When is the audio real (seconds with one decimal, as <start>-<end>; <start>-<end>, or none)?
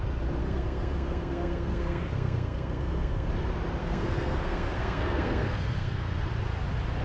0.0-0.4; 3.3-3.8; 6.3-7.0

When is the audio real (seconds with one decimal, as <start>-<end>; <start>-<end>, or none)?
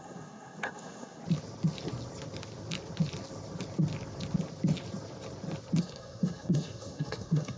1.2-5.8